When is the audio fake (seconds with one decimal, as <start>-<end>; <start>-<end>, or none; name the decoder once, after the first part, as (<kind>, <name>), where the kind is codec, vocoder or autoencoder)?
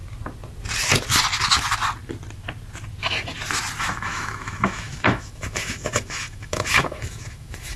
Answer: 3.8-7.8 (autoencoder, DAC-VAE)